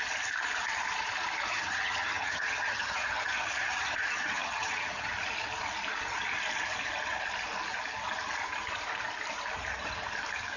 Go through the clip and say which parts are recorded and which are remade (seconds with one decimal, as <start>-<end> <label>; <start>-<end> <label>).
0.0-1.5 recorded; 1.5-5.1 remade; 5.1-10.6 recorded